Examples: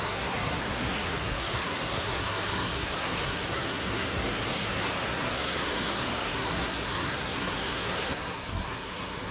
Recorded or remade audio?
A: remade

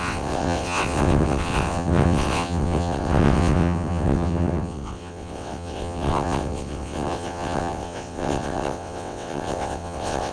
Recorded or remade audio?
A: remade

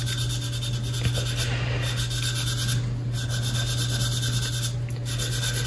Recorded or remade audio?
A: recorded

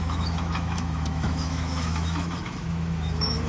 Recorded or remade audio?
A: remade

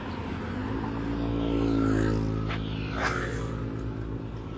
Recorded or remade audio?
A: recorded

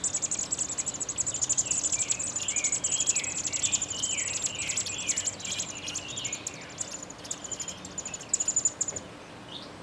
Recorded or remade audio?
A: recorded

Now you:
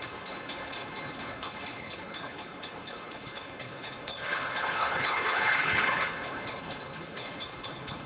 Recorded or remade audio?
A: remade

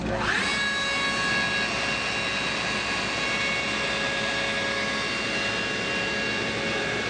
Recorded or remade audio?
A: recorded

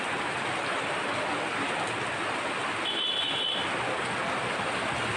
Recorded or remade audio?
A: recorded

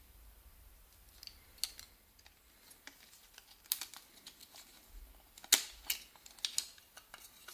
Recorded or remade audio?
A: recorded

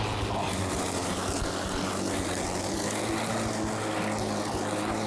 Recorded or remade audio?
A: recorded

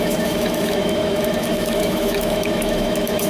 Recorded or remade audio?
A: remade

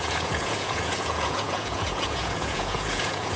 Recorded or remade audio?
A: remade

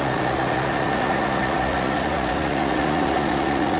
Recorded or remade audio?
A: remade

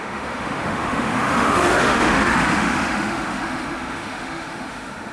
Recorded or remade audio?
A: remade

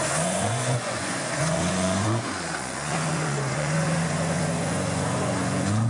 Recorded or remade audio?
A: remade